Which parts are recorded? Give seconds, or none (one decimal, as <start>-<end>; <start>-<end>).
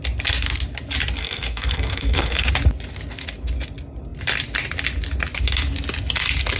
0.0-1.2; 2.5-6.6